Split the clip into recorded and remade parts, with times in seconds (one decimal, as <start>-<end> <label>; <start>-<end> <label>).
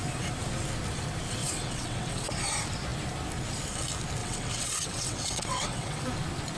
0.0-1.4 recorded; 1.4-2.3 remade; 2.3-4.2 recorded; 4.2-6.0 remade; 6.0-6.6 recorded